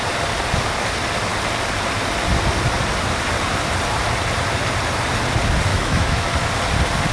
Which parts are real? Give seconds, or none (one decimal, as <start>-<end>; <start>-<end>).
0.0-5.7; 6.3-7.1